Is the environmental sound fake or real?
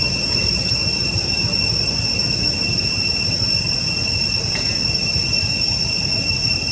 real